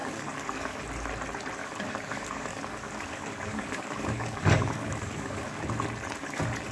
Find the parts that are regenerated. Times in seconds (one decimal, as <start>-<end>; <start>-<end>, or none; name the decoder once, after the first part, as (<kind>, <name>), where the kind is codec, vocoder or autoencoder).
0.0-0.8 (codec, DAC); 1.6-5.6